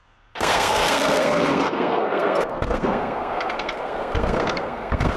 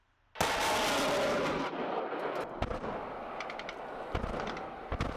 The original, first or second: second